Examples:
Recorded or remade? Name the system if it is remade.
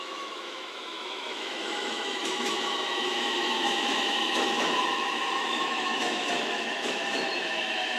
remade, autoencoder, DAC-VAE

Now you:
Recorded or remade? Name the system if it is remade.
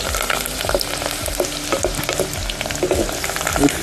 recorded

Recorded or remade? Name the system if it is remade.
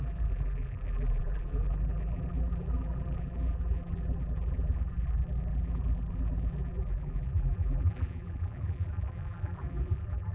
remade, vocoder, BigVGAN v2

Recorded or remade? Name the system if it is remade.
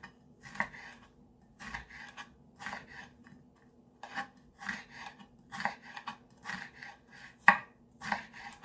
remade, vocoder, BigVGAN v2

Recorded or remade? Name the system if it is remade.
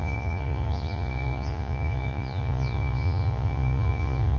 remade, vocoder, Vocos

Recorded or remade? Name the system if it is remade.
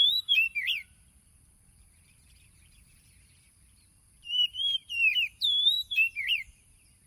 remade, vocoder, BigVGAN v2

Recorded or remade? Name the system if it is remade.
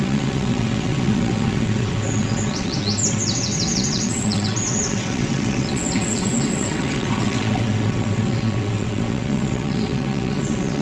remade, vocoder, WaveNeXt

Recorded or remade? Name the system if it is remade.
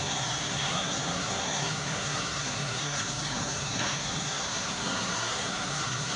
remade, codec, SNAC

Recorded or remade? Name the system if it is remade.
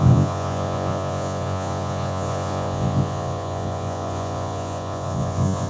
remade, vocoder, Vocos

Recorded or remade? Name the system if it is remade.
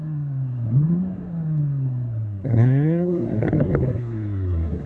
remade, codec, SNAC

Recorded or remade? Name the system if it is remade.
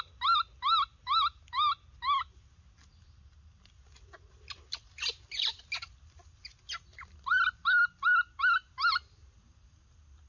recorded